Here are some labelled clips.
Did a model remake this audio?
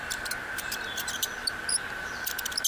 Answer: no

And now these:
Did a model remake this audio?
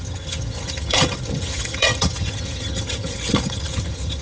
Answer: yes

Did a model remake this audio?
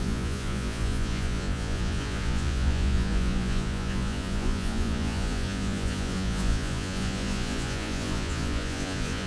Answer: yes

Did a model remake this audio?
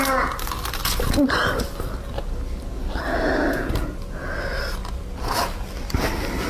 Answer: no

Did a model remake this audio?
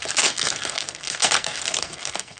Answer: yes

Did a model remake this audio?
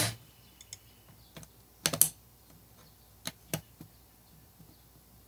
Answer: no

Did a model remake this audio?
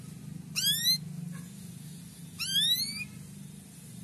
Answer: no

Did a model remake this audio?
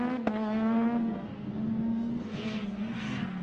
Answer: yes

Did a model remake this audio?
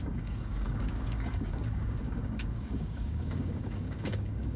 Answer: yes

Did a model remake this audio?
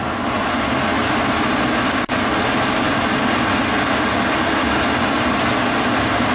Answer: no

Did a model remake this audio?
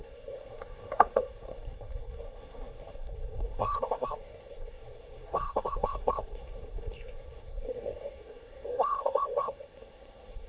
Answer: yes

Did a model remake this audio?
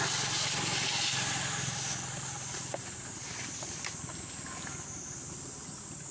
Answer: no